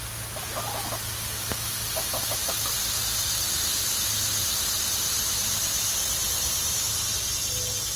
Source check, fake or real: real